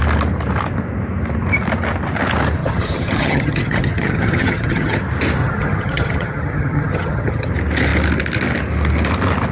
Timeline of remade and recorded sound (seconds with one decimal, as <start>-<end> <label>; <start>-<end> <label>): 0.0-2.6 recorded; 2.6-5.0 remade; 5.0-5.4 recorded; 5.4-7.5 remade; 7.5-9.5 recorded

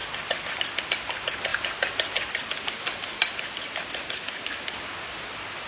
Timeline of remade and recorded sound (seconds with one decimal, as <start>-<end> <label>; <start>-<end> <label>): 0.0-5.7 recorded

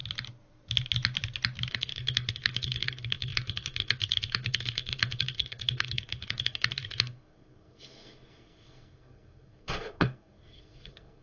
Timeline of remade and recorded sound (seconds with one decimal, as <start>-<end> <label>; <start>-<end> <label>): 0.0-1.7 recorded; 1.7-11.2 remade

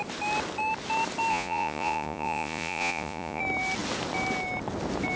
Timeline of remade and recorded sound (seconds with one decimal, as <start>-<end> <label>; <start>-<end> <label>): 0.0-1.3 recorded; 1.3-3.4 remade; 3.4-5.2 recorded